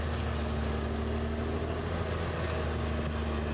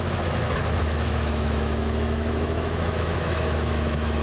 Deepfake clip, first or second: second